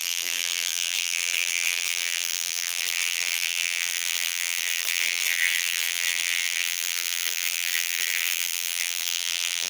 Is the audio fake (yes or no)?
yes